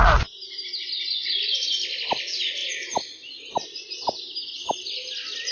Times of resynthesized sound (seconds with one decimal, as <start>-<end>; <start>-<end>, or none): none